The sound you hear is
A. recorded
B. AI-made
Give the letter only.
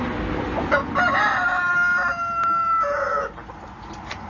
A